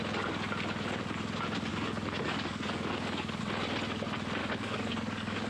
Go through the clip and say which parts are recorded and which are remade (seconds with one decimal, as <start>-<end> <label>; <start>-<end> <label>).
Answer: 0.0-1.7 recorded; 1.7-3.4 remade; 3.4-4.4 recorded; 4.4-5.5 remade

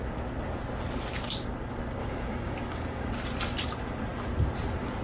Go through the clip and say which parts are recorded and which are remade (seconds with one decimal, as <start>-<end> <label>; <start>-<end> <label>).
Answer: 0.0-2.0 recorded; 2.0-3.1 remade; 3.1-5.0 recorded

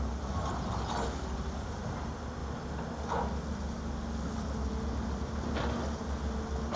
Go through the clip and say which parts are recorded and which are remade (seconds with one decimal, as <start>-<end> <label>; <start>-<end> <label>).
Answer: 0.0-6.8 recorded

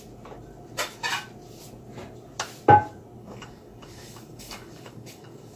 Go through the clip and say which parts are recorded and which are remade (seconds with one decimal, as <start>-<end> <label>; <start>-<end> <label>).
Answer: 0.0-3.2 recorded; 3.2-5.6 remade

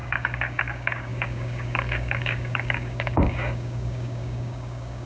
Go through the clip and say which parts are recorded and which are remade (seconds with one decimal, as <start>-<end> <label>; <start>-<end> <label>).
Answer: 0.0-5.1 remade

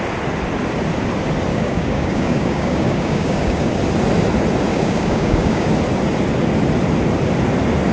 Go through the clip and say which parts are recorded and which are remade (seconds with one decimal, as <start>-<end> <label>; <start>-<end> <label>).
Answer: 0.0-1.5 recorded; 1.5-3.8 remade; 3.8-4.7 recorded; 4.7-5.7 remade; 5.7-7.9 recorded